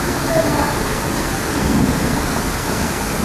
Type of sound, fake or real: fake